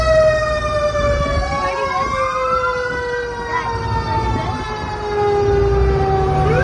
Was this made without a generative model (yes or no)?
yes